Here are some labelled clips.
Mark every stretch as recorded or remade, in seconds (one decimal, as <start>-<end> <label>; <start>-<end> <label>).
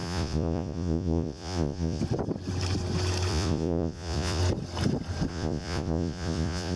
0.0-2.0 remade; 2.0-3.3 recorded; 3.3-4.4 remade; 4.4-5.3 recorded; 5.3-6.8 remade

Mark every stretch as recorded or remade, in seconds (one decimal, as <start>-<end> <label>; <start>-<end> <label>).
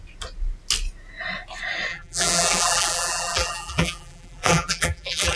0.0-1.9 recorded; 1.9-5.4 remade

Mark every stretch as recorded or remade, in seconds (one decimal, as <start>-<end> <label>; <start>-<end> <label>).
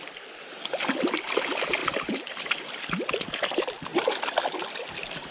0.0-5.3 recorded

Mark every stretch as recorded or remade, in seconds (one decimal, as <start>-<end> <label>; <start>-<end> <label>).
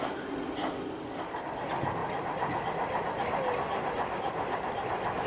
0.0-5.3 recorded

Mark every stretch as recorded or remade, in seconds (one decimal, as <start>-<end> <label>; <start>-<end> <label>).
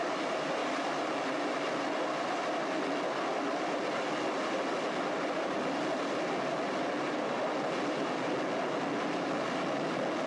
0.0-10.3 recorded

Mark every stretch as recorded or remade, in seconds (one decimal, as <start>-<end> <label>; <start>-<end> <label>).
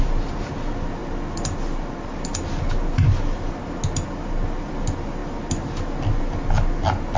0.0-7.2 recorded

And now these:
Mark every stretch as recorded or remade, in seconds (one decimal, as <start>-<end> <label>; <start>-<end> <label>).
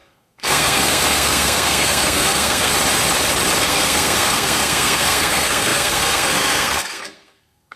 0.0-2.7 remade; 2.7-3.6 recorded; 3.6-7.8 remade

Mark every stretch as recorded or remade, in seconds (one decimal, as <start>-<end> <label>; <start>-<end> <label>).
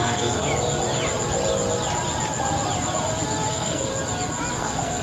0.0-0.5 remade; 0.5-3.5 recorded; 3.5-3.9 remade; 3.9-4.5 recorded; 4.5-5.0 remade